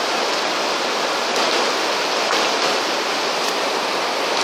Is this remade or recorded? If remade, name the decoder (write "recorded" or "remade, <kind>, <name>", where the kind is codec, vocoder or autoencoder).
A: recorded